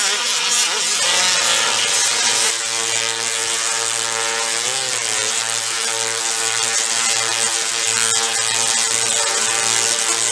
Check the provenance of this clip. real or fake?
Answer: real